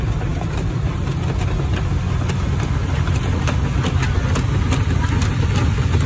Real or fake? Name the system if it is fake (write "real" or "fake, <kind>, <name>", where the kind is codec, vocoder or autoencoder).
real